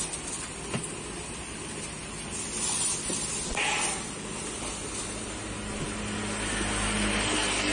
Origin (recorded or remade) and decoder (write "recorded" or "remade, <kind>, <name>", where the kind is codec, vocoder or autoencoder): recorded